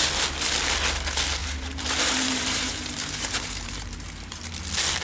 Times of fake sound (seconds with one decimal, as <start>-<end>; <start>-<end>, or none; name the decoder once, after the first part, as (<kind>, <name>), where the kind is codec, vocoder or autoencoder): 1.4-4.4 (vocoder, BigVGAN v2)